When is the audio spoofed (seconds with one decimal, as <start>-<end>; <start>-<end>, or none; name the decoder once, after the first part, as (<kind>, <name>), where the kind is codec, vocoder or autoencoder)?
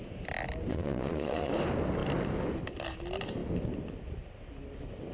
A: 0.7-1.5 (vocoder, Vocos)